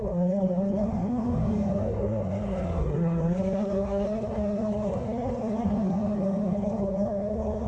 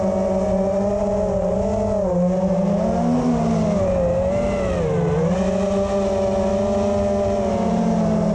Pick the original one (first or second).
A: second